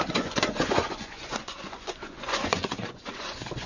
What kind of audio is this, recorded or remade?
remade